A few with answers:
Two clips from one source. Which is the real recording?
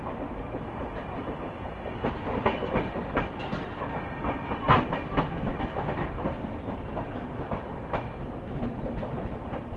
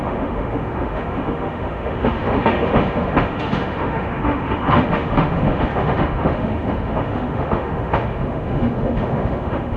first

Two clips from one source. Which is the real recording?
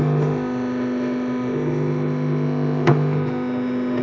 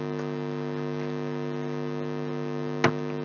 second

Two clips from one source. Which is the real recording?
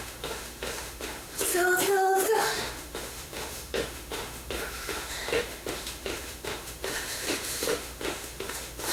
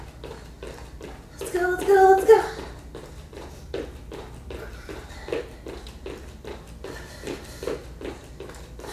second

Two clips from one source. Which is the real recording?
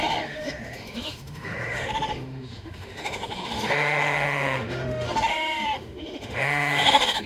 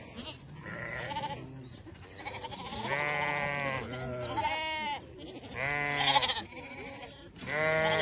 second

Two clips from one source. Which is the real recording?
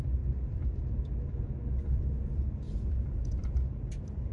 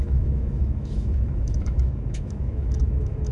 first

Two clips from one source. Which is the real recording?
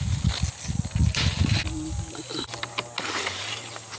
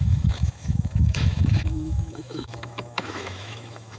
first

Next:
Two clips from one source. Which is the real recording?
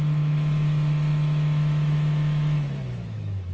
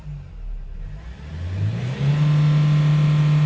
second